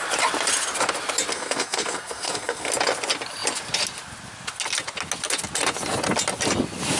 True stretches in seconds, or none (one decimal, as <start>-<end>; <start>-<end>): 0.0-1.3; 2.7-7.0